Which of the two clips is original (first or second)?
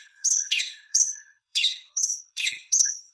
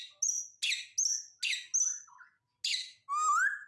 second